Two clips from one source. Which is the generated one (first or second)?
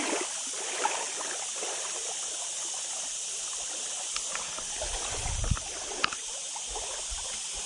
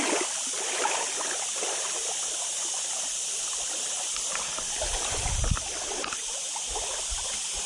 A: second